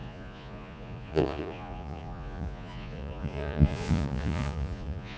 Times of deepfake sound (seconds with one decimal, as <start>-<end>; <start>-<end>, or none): 0.0-5.2